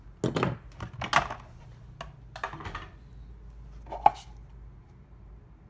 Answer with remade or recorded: recorded